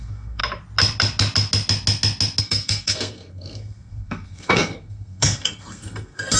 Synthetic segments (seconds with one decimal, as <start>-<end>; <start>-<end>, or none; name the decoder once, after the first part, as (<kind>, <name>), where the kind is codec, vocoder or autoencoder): 0.0-0.4 (codec, SNAC); 2.4-6.4